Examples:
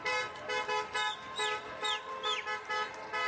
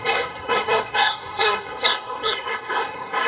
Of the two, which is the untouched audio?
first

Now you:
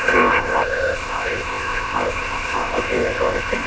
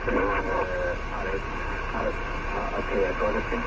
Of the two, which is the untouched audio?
second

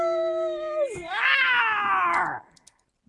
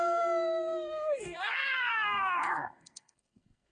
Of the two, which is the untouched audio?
first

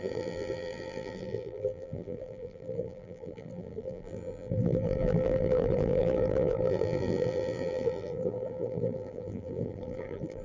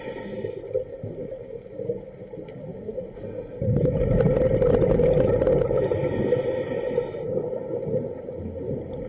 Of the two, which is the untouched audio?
second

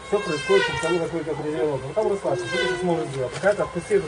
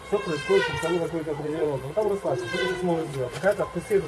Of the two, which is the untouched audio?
first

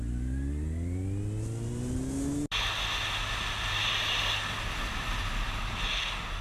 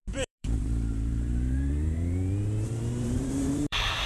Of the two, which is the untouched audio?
first